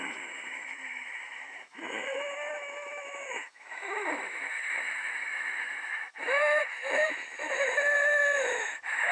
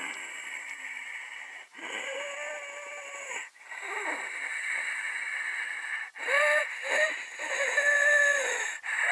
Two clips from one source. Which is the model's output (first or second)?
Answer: first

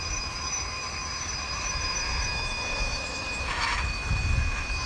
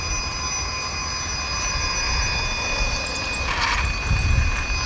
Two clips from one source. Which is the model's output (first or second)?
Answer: first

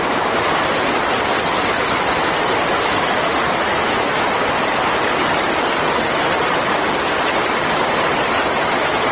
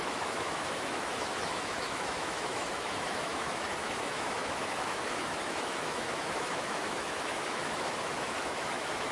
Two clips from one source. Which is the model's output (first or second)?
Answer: second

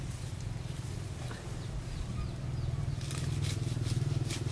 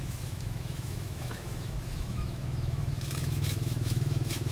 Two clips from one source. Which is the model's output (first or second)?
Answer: second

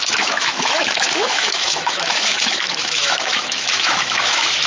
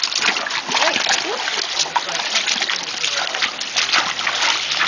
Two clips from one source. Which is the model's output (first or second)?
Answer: first